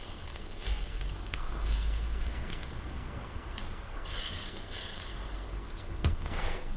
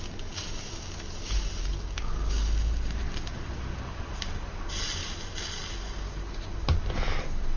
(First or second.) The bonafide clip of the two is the second